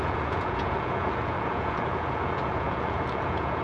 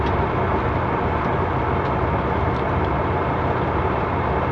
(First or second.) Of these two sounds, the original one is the second